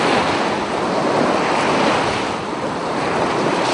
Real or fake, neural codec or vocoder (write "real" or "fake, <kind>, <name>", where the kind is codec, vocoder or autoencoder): real